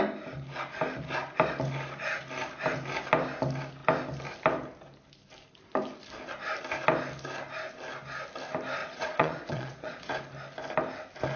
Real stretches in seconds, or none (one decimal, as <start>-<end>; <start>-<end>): 0.0-8.8; 10.1-11.4